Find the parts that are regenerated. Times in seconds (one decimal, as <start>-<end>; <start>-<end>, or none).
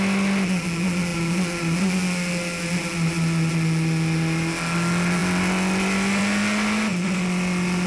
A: none